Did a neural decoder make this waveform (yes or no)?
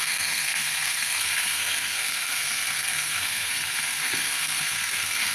yes